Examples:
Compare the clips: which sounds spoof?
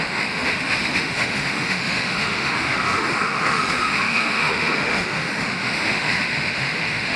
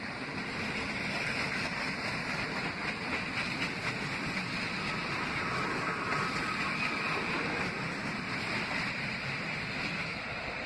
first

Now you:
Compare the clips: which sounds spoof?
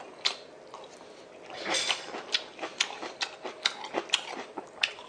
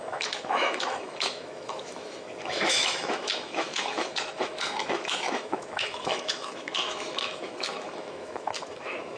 second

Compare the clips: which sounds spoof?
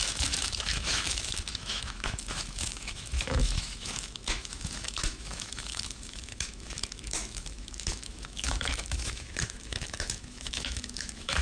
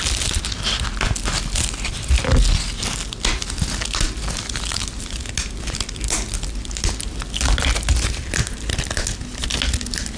first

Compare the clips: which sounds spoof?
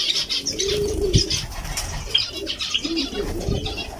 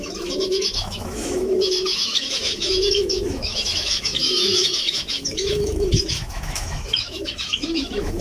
second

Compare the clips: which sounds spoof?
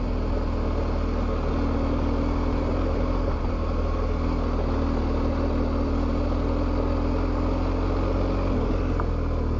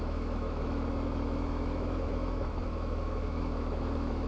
second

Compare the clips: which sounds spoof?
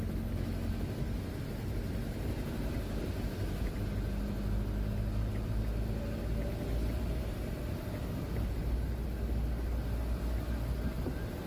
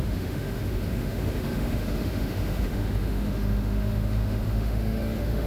second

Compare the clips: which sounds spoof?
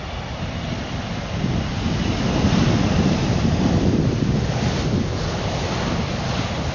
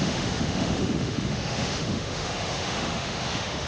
second